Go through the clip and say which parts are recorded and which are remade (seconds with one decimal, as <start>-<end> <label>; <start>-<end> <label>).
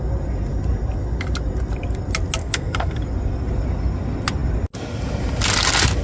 0.0-2.4 recorded; 2.4-3.0 remade; 3.0-6.0 recorded